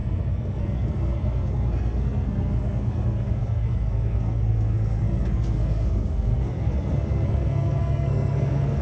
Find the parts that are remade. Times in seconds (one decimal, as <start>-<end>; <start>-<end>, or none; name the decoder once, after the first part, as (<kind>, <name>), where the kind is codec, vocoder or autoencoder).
0.0-8.8 (codec, SNAC)